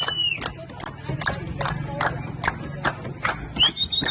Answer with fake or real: real